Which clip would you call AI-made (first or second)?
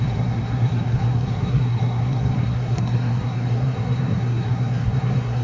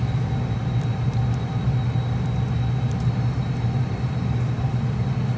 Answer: first